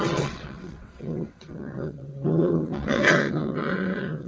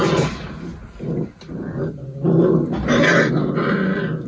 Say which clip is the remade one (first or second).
first